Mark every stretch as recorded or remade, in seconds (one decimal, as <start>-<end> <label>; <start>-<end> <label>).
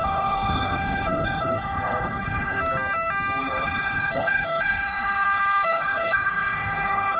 0.0-2.6 remade; 2.6-3.4 recorded; 3.4-7.2 remade